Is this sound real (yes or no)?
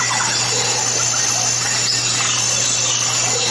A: yes